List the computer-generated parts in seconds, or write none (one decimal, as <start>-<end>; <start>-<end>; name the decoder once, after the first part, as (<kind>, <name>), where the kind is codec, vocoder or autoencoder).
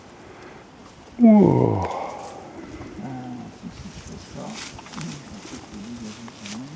none